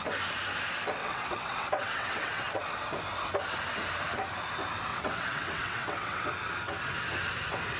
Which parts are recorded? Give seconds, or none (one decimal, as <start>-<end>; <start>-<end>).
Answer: 0.0-1.0; 2.6-4.9; 6.2-7.8